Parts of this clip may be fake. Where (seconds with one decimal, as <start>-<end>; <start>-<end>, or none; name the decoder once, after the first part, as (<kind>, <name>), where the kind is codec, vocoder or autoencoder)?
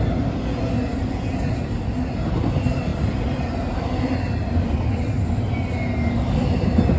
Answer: 0.9-1.5 (vocoder, BigVGAN v2)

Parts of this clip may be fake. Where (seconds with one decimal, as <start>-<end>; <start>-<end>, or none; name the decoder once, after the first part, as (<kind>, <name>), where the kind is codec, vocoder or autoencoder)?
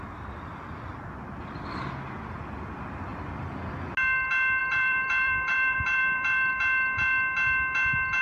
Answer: 3.1-3.7 (vocoder, BigVGAN v2); 4.6-6.5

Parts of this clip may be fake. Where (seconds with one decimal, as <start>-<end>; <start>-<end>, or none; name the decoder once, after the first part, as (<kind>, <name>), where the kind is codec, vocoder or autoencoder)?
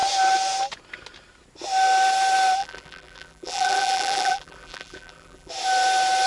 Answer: 2.6-5.5 (vocoder, BigVGAN v2)